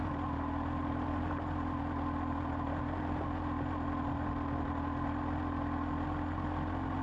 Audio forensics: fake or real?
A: real